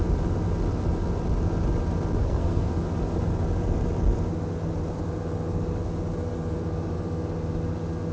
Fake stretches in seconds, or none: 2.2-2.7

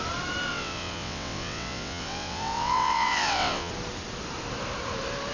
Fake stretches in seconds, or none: 0.5-3.7

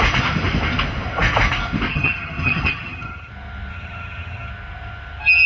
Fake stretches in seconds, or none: 1.9-3.3; 3.7-4.5

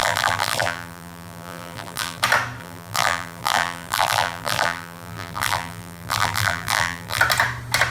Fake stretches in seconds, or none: 0.0-2.2; 2.6-7.2

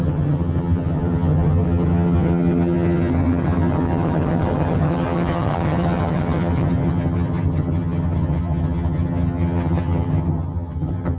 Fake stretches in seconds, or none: 0.0-11.2